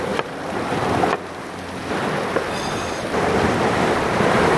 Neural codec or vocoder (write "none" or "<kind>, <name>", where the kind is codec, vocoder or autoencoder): vocoder, BigVGAN v2